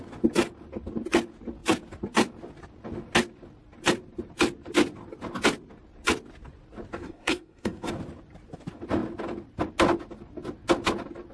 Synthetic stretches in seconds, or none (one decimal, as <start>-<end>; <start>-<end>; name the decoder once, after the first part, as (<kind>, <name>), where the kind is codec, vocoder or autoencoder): 7.0-7.9 (codec, SNAC)